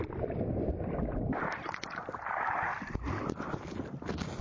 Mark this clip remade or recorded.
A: recorded